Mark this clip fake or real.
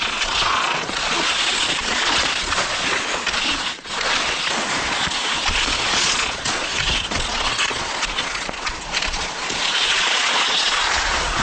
fake